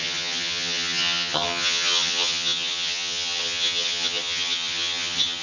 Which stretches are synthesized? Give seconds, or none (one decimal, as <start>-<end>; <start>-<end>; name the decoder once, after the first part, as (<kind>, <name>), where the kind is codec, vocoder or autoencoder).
0.0-5.4 (vocoder, HiFi-GAN)